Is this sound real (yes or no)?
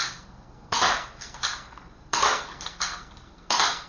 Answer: no